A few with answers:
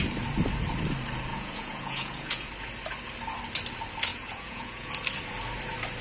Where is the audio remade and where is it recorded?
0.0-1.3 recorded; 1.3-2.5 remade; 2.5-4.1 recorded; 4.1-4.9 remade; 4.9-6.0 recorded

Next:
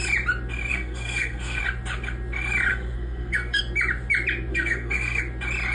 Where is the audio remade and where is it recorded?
0.0-0.7 recorded; 0.7-1.6 remade; 1.6-2.7 recorded; 2.7-3.6 remade; 3.6-4.5 recorded; 4.5-5.2 remade; 5.2-5.7 recorded

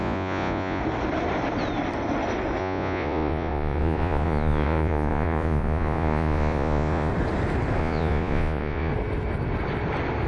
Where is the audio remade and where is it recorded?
0.0-0.8 remade; 0.8-2.6 recorded; 2.6-7.1 remade; 7.1-7.8 recorded; 7.8-8.9 remade; 8.9-10.3 recorded

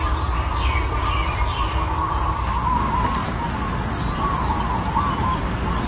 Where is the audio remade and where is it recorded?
0.0-1.2 recorded; 1.2-2.0 remade; 2.0-5.9 recorded

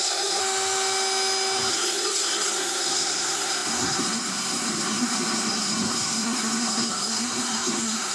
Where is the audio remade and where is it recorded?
0.0-0.4 remade; 0.4-1.7 recorded; 1.7-8.1 remade

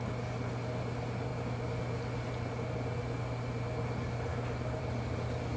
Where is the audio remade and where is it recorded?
0.0-4.3 recorded; 4.3-4.8 remade; 4.8-5.6 recorded